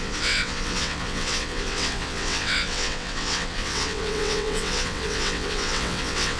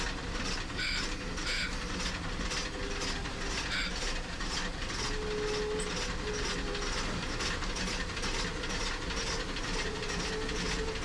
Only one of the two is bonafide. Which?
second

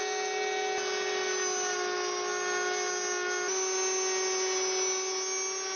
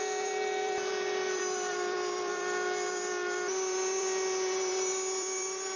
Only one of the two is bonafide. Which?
first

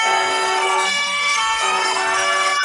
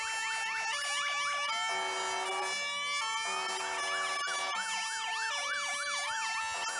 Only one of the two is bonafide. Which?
second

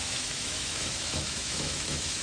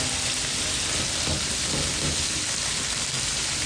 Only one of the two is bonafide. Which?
second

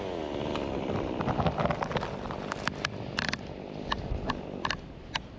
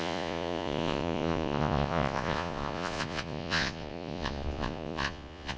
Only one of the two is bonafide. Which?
first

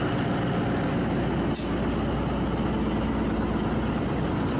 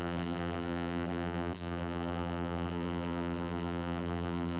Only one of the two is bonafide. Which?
first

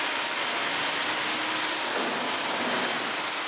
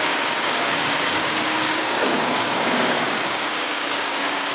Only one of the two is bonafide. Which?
first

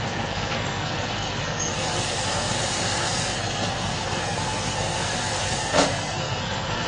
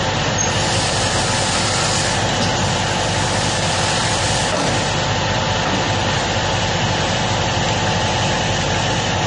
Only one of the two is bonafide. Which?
second